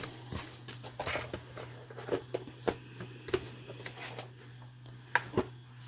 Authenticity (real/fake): real